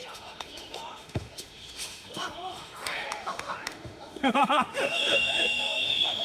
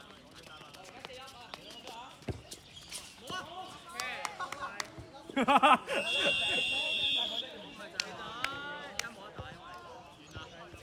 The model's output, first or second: first